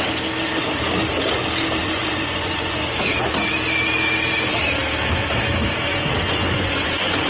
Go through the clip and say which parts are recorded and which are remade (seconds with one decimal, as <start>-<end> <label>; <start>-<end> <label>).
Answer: 0.0-1.8 recorded; 1.8-3.0 remade; 3.0-5.9 recorded; 5.9-7.3 remade